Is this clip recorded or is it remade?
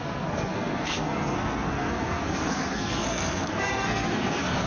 remade